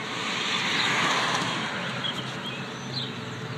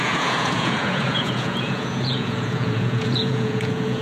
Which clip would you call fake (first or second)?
second